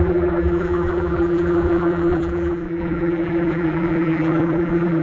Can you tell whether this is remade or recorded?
remade